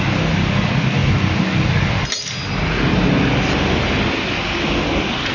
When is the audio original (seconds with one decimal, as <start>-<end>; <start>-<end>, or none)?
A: 0.0-5.3